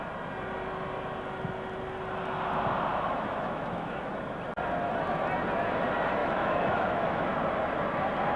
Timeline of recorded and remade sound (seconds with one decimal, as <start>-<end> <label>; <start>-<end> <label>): 0.0-2.9 recorded; 2.9-4.1 remade; 4.1-6.2 recorded; 6.2-7.2 remade; 7.2-8.4 recorded